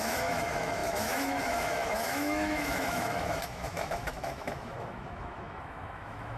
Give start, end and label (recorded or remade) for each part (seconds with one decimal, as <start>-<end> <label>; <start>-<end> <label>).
0.0-6.4 remade

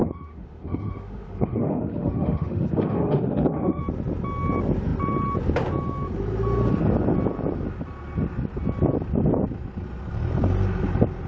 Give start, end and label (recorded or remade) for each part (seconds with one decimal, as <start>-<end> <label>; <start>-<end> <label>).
0.0-3.8 remade; 3.8-11.3 recorded

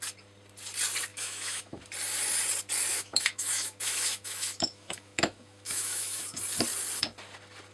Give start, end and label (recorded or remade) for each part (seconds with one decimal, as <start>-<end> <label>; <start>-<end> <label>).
0.0-1.1 recorded; 1.1-1.8 remade; 1.8-2.9 recorded; 2.9-6.4 remade; 6.4-7.7 recorded

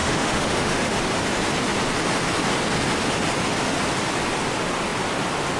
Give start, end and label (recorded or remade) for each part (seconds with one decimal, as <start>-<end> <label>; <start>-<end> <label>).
0.0-1.0 remade; 1.0-5.6 recorded